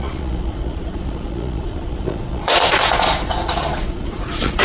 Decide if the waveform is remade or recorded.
remade